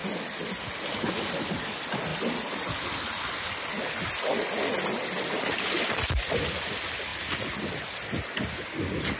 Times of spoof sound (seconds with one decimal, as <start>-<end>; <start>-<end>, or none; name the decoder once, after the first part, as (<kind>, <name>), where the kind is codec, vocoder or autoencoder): none